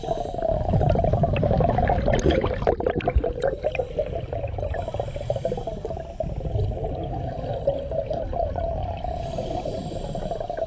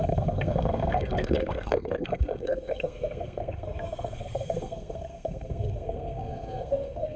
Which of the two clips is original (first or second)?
first